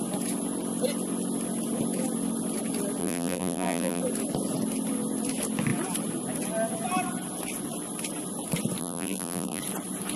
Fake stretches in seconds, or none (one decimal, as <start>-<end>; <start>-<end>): 3.0-4.0; 8.8-9.6